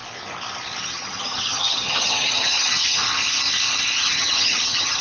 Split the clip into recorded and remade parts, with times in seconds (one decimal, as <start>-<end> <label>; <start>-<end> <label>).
0.0-0.8 recorded; 0.8-3.0 remade; 3.0-4.0 recorded; 4.0-5.0 remade